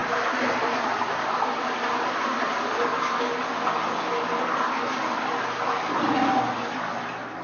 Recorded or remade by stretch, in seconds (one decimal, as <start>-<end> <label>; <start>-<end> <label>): 0.0-1.9 remade; 1.9-7.4 recorded